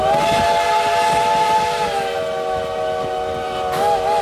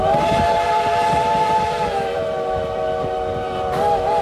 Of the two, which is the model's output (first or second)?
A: second